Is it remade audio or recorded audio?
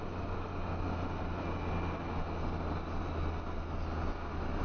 recorded